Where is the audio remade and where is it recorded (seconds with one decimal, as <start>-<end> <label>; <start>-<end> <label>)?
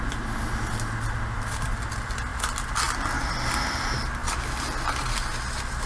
0.0-5.9 recorded